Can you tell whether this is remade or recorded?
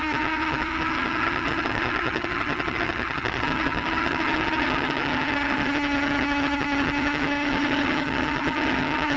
remade